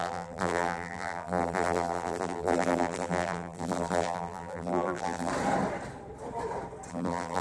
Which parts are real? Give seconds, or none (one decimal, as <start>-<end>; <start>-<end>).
5.3-6.9